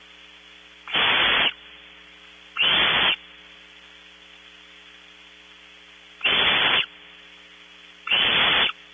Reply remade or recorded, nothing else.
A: recorded